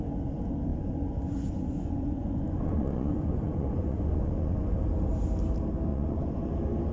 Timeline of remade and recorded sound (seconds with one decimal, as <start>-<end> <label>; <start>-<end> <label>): 0.0-0.7 recorded; 0.7-4.8 remade; 4.8-5.9 recorded; 5.9-6.5 remade; 6.5-6.9 recorded